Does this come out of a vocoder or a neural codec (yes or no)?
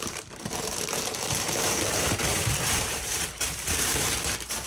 yes